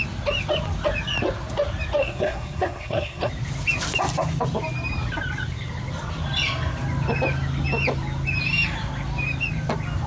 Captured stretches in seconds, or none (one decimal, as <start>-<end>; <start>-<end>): 0.0-2.0; 3.3-10.1